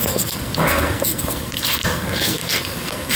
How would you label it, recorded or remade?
remade